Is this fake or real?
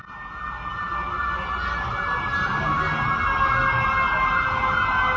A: real